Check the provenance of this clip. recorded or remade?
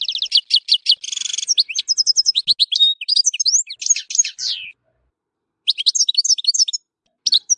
recorded